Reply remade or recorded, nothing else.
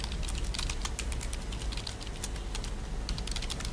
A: recorded